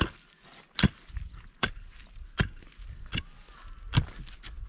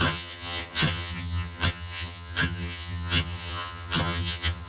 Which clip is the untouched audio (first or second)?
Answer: first